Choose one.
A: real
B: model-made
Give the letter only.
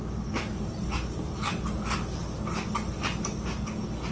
A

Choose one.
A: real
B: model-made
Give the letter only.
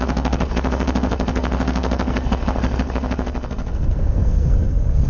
B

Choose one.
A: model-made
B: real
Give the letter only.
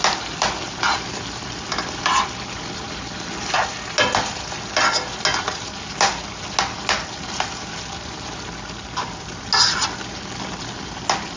B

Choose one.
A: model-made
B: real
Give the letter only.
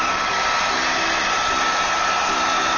B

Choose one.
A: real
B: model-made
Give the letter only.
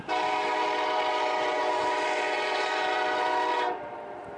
B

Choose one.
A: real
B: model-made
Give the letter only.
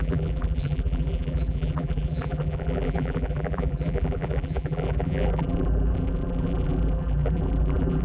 B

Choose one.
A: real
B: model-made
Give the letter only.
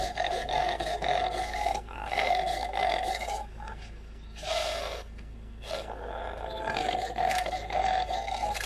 B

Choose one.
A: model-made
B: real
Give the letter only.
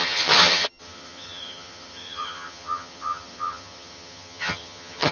A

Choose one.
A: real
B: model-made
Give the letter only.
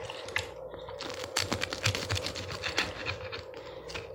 A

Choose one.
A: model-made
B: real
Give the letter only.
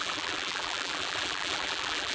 A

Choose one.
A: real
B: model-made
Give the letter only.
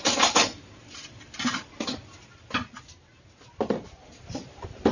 A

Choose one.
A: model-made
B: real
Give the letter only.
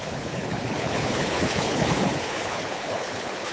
A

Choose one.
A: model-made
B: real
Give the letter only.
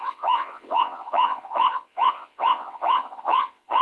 A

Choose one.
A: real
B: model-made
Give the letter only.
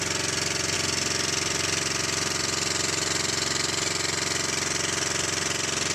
A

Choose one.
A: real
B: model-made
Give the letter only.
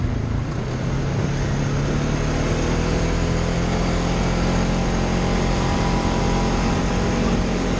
A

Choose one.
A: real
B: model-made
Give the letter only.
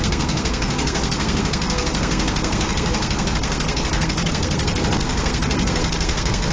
B